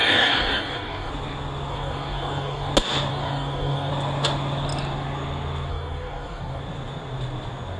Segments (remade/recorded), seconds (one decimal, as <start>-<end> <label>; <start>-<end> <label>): 0.0-1.1 remade; 1.1-1.7 recorded; 1.7-2.7 remade; 2.7-3.1 recorded; 3.1-3.9 remade; 3.9-5.7 recorded; 5.7-6.6 remade; 6.6-7.8 recorded